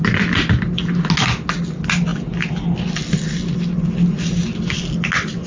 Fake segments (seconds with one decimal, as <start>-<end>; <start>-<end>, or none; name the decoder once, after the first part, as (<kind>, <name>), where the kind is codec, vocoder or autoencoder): none